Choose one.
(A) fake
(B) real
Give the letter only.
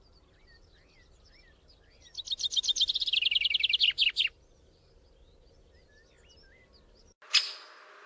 B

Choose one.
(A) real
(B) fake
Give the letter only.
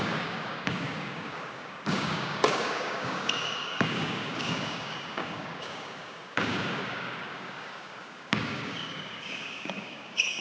B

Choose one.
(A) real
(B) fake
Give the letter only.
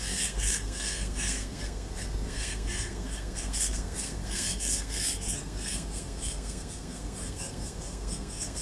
B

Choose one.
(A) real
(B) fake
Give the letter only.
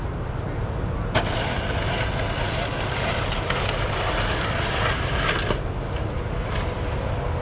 A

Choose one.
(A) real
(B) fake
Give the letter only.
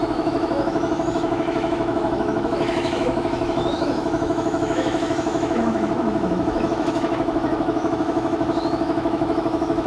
B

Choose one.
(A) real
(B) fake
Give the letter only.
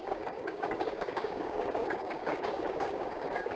B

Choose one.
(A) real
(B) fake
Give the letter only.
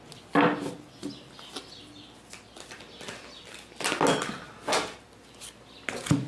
A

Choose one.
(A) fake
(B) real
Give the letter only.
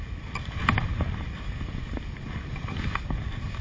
B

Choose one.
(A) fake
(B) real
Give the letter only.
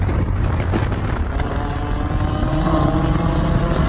B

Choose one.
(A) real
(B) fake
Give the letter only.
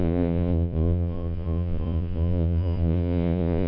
B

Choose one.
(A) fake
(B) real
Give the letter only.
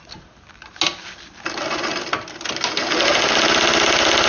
B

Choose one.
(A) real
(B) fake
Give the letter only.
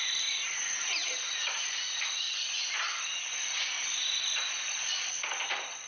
A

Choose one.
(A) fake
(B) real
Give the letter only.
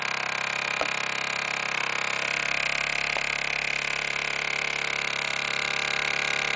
B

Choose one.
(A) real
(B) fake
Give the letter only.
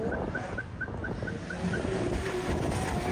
A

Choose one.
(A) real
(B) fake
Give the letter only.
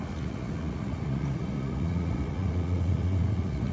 B